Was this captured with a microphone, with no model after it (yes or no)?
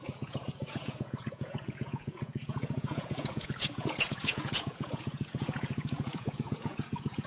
no